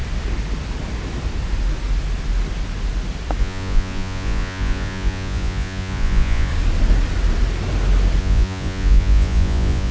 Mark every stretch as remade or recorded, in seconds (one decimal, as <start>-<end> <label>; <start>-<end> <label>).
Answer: 0.0-3.4 recorded; 3.4-6.5 remade; 6.5-8.2 recorded; 8.2-9.9 remade